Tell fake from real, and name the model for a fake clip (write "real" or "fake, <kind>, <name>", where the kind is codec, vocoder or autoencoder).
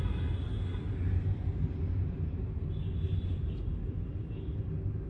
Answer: real